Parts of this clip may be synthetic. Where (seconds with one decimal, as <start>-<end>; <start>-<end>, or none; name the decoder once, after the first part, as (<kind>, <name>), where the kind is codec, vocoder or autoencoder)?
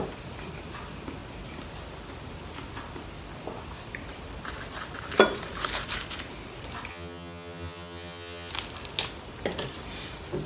6.9-8.5 (vocoder, HiFi-GAN)